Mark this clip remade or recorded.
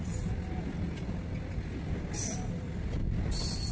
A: recorded